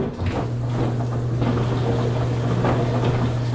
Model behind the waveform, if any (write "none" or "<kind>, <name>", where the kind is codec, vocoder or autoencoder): none